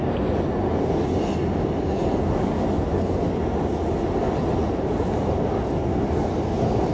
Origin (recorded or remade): recorded